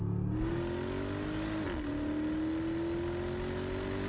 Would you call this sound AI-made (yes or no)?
no